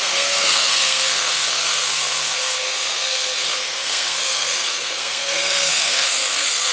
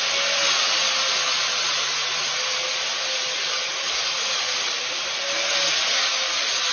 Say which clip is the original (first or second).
second